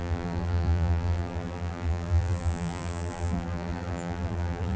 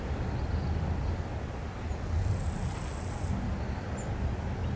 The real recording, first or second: second